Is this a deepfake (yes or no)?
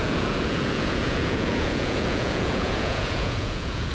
yes